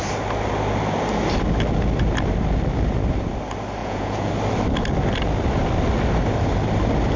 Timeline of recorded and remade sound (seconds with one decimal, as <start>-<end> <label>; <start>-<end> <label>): 0.0-3.8 recorded; 3.8-4.3 remade; 4.3-7.2 recorded